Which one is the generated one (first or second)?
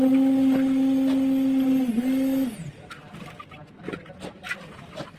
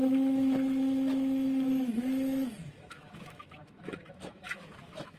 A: second